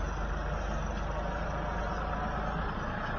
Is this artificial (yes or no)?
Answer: no